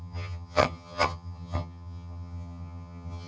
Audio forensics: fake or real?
fake